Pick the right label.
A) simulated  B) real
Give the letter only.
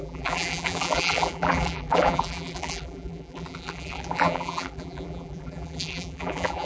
A